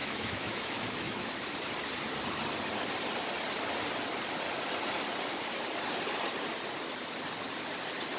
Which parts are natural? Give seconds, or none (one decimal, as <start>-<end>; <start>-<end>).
1.3-8.2